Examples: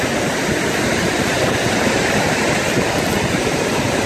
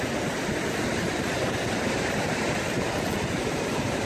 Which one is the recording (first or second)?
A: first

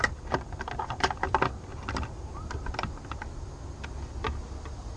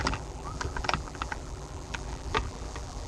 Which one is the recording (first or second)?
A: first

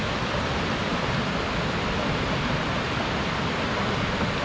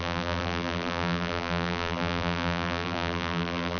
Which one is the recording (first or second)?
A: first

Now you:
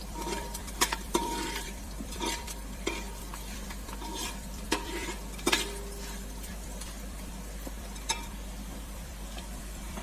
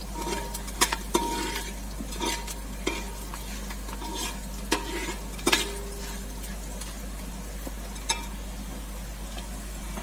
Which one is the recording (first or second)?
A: second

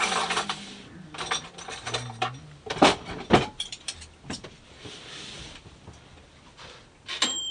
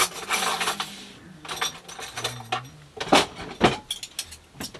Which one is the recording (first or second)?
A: second